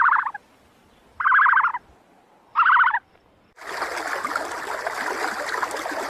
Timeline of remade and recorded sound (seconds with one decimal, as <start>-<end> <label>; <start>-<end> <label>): 0.0-6.1 recorded